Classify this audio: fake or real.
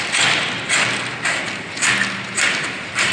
real